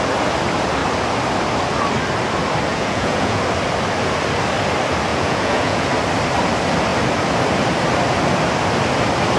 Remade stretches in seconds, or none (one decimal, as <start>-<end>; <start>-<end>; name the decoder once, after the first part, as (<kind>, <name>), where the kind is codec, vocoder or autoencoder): 2.7-3.4 (vocoder, Vocos); 5.1-5.9